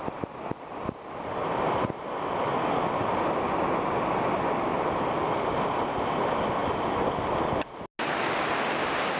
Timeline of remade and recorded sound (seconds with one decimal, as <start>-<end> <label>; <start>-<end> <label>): 0.0-9.2 recorded